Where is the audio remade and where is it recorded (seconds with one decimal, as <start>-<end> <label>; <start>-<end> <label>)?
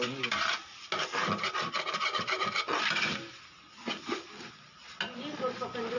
0.0-6.0 recorded